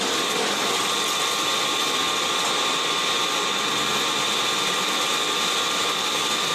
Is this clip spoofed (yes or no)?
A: no